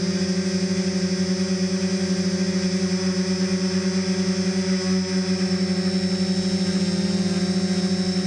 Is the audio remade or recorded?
recorded